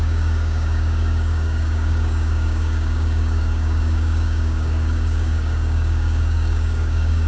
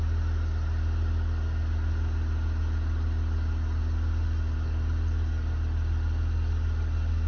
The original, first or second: second